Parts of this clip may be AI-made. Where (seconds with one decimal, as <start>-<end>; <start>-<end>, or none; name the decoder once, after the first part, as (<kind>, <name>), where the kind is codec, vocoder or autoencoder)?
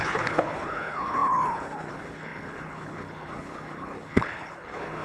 0.0-5.0 (codec, HILCodec)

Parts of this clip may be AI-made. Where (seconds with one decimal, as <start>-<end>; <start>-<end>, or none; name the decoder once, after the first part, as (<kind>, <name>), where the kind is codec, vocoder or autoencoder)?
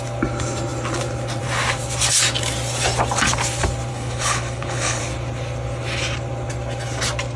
3.9-5.0 (codec, HILCodec)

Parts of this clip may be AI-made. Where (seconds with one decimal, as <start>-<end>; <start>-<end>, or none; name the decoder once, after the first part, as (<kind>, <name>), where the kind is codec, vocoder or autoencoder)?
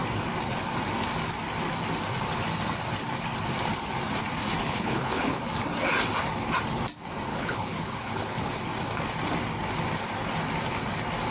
4.6-5.4 (codec, HILCodec); 7.3-8.5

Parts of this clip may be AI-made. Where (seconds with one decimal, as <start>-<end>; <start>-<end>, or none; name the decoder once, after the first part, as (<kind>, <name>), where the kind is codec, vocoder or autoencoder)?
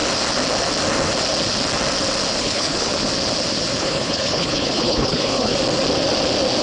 2.4-2.9 (codec, HILCodec); 3.8-5.5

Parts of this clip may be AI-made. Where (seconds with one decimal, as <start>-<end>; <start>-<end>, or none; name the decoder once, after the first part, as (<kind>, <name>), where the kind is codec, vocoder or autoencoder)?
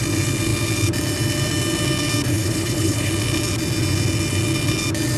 2.3-3.1 (codec, HILCodec)